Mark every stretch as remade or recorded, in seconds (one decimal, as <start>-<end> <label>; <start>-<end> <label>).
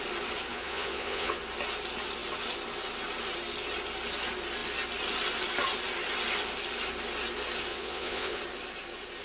0.0-0.5 recorded; 0.5-1.4 remade; 1.4-7.7 recorded; 7.7-8.4 remade; 8.4-9.2 recorded